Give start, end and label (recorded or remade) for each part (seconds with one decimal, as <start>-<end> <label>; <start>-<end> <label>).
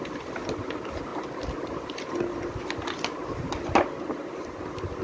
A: 0.0-1.1 recorded; 1.1-2.1 remade; 2.1-5.0 recorded